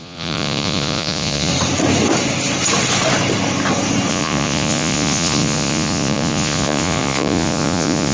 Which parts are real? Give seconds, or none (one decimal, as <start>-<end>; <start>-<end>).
1.5-4.1

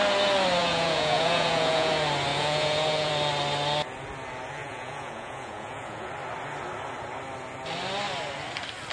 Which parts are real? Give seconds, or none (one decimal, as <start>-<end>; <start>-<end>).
0.0-0.6; 1.9-2.3; 3.1-4.6; 6.1-8.9